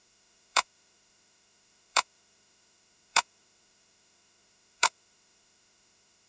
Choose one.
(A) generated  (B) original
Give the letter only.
A